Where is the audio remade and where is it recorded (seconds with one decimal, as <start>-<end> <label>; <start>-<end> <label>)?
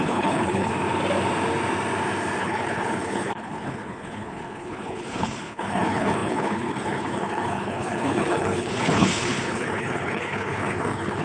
0.0-0.7 remade; 0.7-2.4 recorded; 2.4-11.2 remade